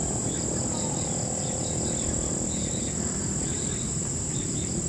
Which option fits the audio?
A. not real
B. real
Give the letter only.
A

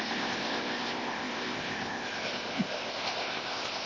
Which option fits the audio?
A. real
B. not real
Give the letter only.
B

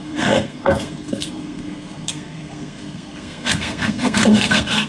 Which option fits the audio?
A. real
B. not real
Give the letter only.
B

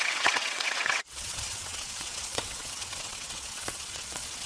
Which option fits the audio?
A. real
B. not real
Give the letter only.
B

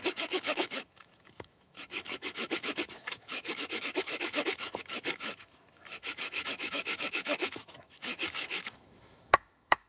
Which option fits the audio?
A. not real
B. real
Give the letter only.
A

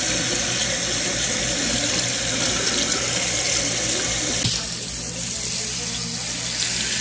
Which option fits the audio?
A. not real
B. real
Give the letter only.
B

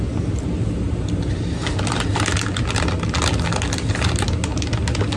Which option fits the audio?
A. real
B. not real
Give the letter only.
A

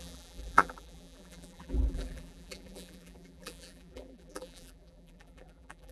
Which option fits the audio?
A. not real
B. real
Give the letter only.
A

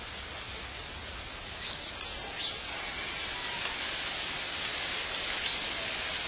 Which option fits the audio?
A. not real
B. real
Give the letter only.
B